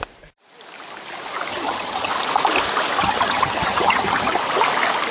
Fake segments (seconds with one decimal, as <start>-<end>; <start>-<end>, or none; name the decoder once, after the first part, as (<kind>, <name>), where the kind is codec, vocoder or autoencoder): 1.5-2.1 (vocoder, HiFi-GAN); 3.0-4.4